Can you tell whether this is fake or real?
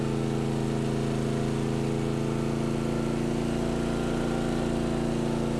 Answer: real